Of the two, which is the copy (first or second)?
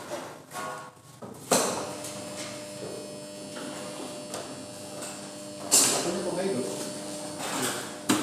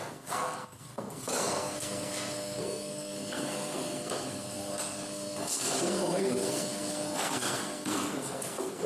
second